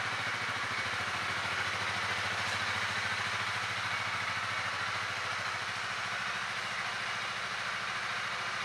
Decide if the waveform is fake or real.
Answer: real